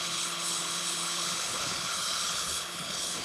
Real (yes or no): no